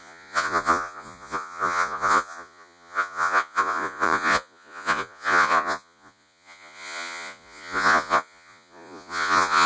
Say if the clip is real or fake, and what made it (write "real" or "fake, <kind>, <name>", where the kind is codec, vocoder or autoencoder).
fake, vocoder, Vocos